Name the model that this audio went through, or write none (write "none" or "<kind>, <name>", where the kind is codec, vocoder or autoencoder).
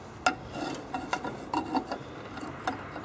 none